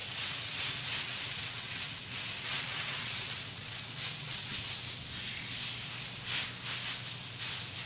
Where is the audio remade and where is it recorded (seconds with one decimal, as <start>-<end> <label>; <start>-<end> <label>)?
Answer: 0.0-4.7 remade; 4.7-7.9 recorded